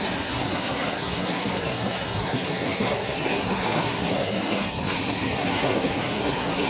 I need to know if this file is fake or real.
fake